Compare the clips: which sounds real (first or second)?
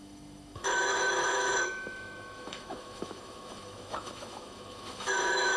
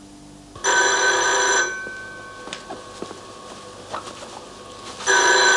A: second